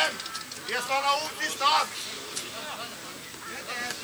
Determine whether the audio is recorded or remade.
recorded